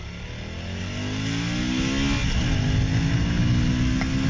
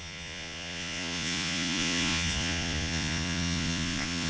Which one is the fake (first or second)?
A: second